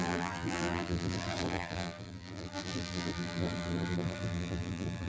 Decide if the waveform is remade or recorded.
remade